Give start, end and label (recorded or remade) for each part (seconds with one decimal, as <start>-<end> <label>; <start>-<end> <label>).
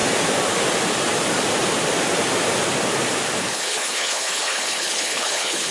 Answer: 0.0-3.4 recorded; 3.4-5.7 remade